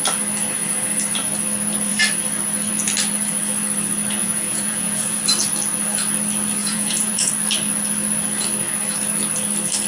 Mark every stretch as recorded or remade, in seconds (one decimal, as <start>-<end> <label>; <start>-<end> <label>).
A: 0.0-4.2 recorded; 4.2-5.2 remade; 5.2-6.6 recorded; 6.6-7.3 remade; 7.3-9.9 recorded